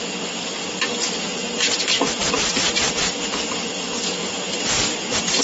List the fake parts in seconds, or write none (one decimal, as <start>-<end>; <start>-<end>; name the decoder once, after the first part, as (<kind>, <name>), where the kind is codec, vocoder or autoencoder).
none